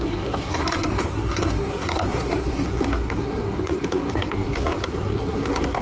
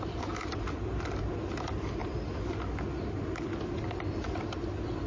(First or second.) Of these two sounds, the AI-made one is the first